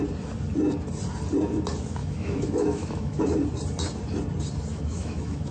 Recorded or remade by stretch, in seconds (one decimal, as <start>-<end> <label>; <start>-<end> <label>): 0.0-2.0 recorded; 2.0-3.2 remade; 3.2-4.7 recorded; 4.7-5.5 remade